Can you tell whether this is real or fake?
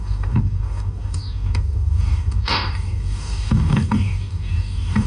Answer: fake